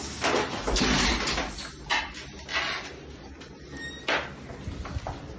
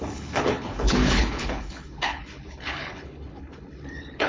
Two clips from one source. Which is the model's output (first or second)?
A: second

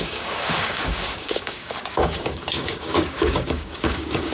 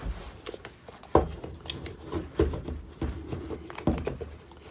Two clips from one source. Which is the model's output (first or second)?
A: first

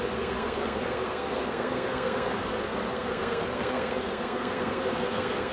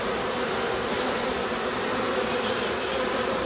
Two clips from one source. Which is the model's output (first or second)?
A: first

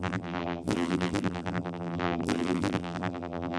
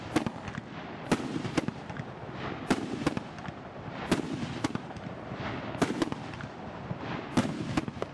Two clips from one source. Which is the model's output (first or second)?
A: first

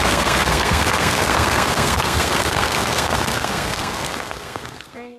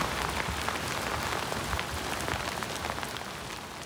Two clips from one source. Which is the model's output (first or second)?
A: first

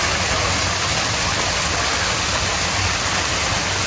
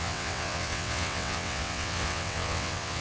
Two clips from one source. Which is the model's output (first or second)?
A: second